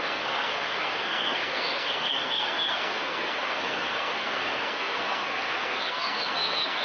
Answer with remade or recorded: remade